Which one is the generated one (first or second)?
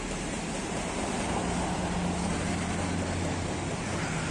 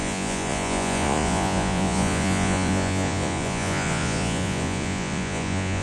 second